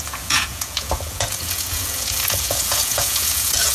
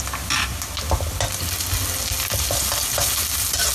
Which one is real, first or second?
second